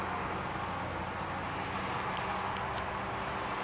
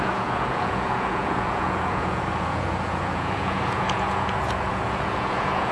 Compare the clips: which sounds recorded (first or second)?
first